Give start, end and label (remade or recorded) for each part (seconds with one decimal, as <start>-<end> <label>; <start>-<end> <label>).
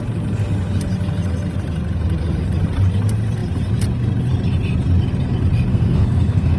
0.0-5.7 recorded; 5.7-6.6 remade